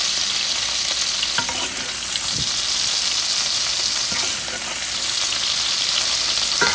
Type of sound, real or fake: real